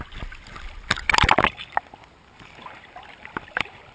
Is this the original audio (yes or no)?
yes